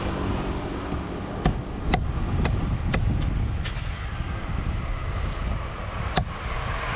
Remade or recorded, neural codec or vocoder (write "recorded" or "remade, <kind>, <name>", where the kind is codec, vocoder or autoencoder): recorded